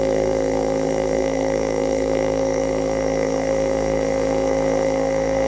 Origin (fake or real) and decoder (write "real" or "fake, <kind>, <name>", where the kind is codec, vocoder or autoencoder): fake, codec, SNAC